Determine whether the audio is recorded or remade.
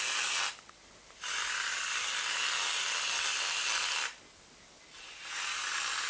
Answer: recorded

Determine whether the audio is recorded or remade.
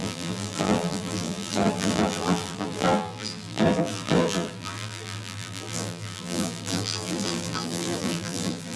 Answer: remade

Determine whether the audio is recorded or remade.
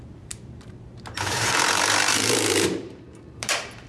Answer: remade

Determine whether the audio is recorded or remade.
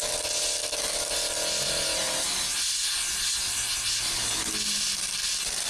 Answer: recorded